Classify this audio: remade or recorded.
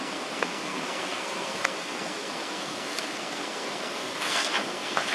remade